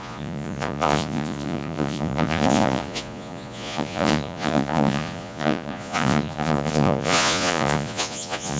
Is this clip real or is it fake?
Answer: fake